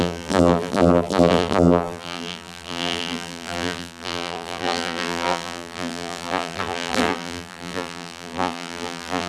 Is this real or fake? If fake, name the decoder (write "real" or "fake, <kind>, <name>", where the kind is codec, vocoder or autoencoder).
fake, vocoder, BigVGAN v2